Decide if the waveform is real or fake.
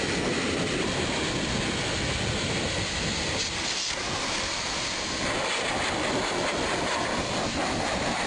real